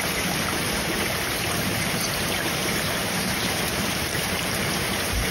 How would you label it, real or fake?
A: fake